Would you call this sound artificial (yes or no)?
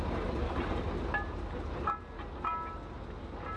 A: no